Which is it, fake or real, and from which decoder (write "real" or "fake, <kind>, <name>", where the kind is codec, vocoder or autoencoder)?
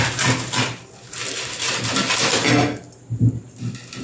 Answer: real